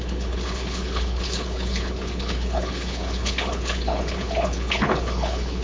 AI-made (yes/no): yes